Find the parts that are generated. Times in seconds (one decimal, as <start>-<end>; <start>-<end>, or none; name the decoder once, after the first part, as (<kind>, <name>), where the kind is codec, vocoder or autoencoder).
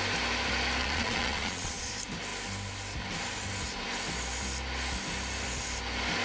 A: 0.8-1.9 (vocoder, Vocos)